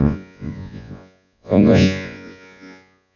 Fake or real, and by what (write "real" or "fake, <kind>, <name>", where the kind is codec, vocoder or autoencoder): fake, vocoder, Vocos